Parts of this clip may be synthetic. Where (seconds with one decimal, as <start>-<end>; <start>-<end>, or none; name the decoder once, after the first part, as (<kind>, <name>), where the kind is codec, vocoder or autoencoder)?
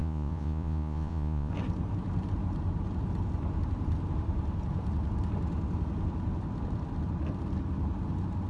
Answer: 0.0-1.5 (vocoder, Vocos)